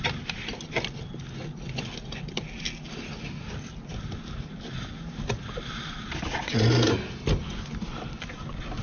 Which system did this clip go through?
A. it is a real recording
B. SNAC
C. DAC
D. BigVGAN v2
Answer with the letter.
A